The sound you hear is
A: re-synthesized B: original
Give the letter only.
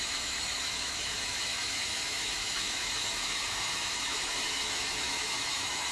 A